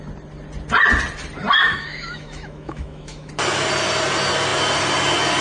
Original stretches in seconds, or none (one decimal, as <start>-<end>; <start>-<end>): 0.0-1.6; 3.3-5.4